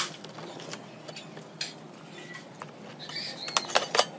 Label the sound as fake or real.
real